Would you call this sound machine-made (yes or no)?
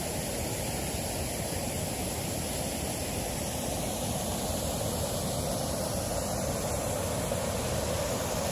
no